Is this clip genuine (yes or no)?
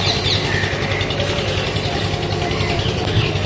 yes